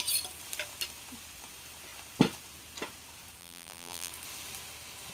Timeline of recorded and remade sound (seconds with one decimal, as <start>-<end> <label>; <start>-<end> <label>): 0.0-3.4 recorded; 3.4-4.1 remade; 4.1-5.1 recorded